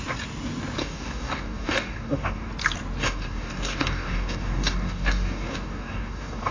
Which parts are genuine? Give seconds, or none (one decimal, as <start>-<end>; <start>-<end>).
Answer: 0.0-0.8; 2.5-3.0